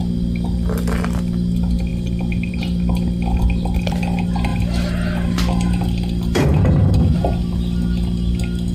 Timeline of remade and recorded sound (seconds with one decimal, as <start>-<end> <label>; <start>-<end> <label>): 0.0-1.9 recorded; 1.9-2.5 remade; 2.5-4.5 recorded; 4.5-6.4 remade; 6.4-8.7 recorded

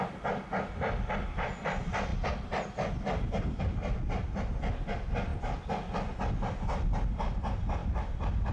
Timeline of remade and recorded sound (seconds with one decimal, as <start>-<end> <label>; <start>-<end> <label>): 0.0-7.8 recorded; 7.8-8.5 remade